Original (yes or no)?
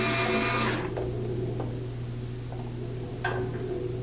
yes